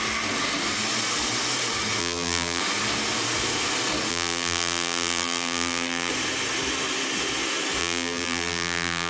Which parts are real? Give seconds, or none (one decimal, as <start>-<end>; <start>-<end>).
0.0-2.0; 2.6-4.1; 6.1-7.8